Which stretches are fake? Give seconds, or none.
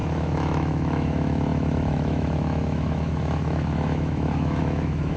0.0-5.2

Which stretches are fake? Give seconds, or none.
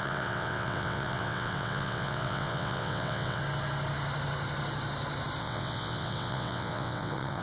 0.0-3.4; 5.4-7.4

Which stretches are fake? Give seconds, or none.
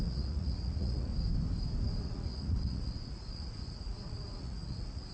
0.0-1.1; 2.0-5.1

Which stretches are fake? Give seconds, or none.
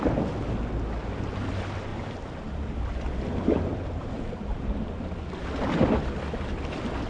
1.9-2.7; 3.7-4.8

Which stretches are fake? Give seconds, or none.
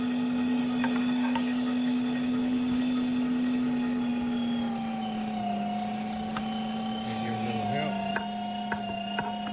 0.6-2.8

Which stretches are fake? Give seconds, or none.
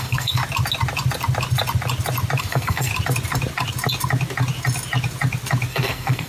0.0-0.4; 2.4-2.9; 5.7-6.3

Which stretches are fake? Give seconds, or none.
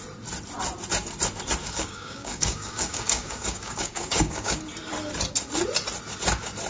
1.6-4.6